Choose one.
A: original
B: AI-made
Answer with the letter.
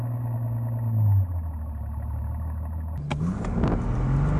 A